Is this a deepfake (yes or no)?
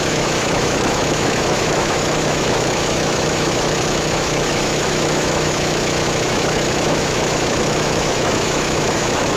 yes